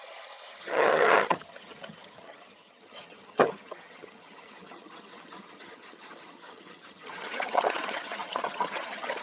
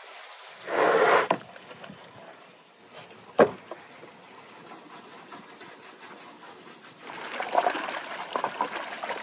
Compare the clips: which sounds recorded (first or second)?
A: second